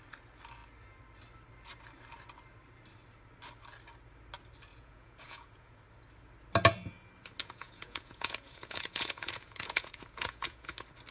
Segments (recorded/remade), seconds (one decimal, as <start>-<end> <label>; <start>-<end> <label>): 0.0-4.7 recorded; 4.7-5.8 remade; 5.8-7.4 recorded; 7.4-10.7 remade; 10.7-11.1 recorded